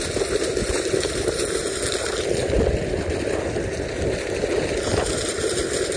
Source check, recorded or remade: recorded